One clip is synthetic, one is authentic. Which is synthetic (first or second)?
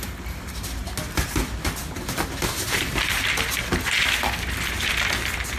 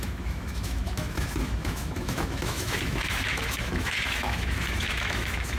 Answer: second